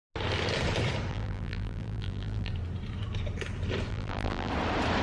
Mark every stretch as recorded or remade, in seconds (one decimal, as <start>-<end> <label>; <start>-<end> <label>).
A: 0.0-1.1 recorded; 1.1-2.5 remade; 2.5-3.9 recorded; 3.9-4.5 remade; 4.5-5.0 recorded